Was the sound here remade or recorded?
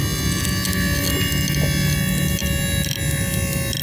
recorded